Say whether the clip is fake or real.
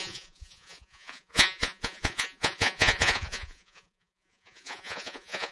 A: fake